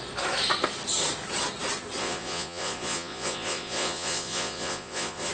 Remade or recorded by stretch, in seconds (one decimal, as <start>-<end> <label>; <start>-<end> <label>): 0.0-2.0 recorded; 2.0-5.3 remade

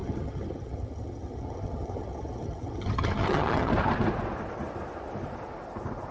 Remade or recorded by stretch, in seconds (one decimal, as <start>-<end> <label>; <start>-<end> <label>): 0.0-3.7 remade; 3.7-6.1 recorded

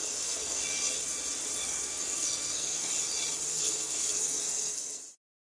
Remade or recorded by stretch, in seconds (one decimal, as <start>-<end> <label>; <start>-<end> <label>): 0.0-0.6 remade; 0.6-1.6 recorded; 1.6-2.9 remade; 2.9-3.5 recorded; 3.5-5.0 remade; 5.0-5.4 recorded

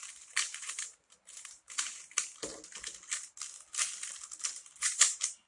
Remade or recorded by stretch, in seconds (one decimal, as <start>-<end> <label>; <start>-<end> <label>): 0.0-2.0 remade; 2.0-4.5 recorded; 4.5-5.5 remade